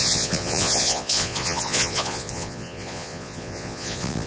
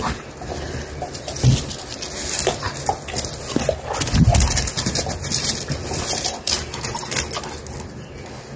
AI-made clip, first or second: first